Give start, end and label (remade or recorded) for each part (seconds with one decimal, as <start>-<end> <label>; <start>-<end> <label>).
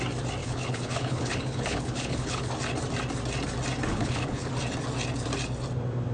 0.0-0.4 recorded; 0.4-2.5 remade; 2.5-3.9 recorded; 3.9-4.5 remade; 4.5-6.1 recorded